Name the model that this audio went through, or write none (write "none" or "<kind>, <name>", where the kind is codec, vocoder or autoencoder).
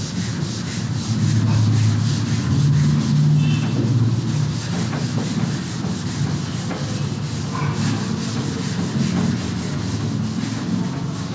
none